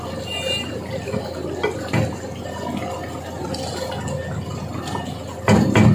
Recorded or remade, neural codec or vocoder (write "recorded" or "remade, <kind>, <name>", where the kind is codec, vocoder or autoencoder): recorded